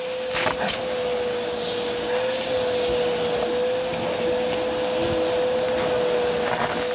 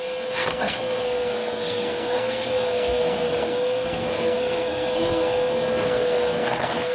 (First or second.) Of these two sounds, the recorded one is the first